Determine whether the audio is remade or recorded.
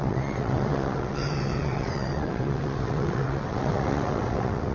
remade